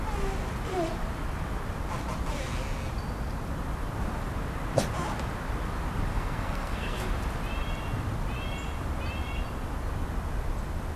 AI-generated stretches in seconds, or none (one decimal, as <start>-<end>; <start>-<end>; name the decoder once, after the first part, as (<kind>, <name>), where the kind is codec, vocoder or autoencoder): 6.1-7.1 (codec, SNAC)